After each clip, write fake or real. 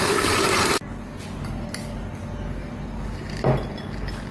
real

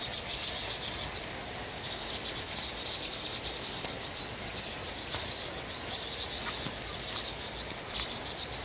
real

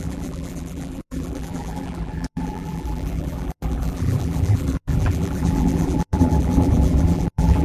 fake